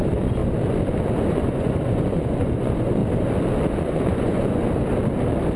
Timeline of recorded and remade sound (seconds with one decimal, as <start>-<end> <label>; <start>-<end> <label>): 0.0-0.4 remade; 0.4-1.3 recorded; 1.3-3.0 remade; 3.0-3.8 recorded; 3.8-4.6 remade; 4.6-5.6 recorded